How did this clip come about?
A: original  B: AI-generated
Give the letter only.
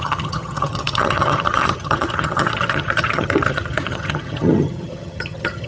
B